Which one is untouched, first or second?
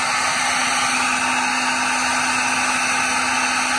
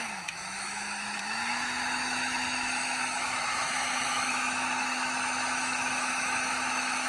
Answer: first